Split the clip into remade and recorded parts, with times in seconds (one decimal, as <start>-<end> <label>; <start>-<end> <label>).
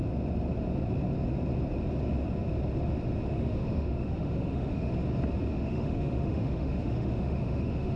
0.0-3.3 recorded; 3.3-4.9 remade; 4.9-5.5 recorded; 5.5-8.0 remade